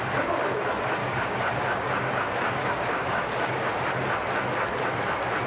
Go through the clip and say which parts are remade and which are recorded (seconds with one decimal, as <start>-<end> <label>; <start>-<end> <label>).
0.0-1.0 recorded; 1.0-3.8 remade; 3.8-5.5 recorded